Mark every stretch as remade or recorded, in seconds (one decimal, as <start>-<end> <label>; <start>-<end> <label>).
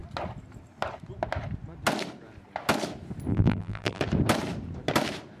0.0-3.3 recorded; 3.3-4.0 remade; 4.0-5.4 recorded